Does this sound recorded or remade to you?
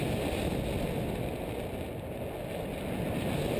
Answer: recorded